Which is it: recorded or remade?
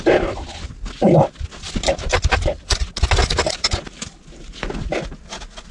recorded